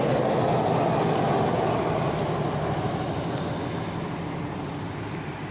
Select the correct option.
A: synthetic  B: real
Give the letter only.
B